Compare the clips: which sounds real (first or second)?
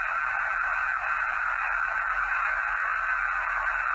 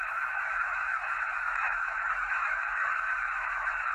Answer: first